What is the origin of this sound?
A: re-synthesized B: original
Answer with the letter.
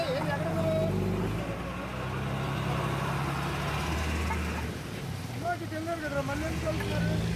B